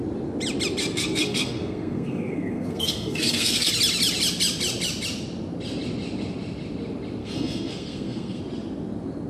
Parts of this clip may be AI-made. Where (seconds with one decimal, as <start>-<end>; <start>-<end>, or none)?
0.8-3.7; 7.2-8.4